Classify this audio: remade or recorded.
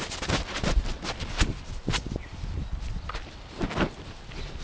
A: recorded